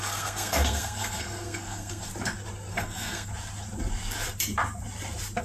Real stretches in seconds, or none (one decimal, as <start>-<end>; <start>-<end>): 2.1-2.7; 3.3-5.4